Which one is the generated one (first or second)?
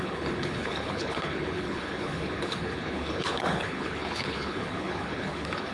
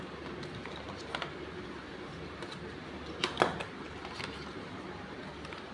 first